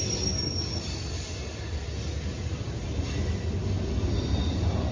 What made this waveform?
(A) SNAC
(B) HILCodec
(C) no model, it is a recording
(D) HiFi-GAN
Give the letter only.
C